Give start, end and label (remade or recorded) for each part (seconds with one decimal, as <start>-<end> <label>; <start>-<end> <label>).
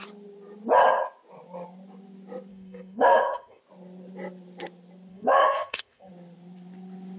0.0-2.5 recorded; 2.5-3.6 remade; 3.6-5.1 recorded; 5.1-6.1 remade; 6.1-7.2 recorded